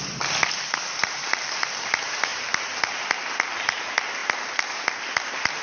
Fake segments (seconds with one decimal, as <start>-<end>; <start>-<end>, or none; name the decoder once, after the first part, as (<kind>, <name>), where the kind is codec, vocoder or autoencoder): none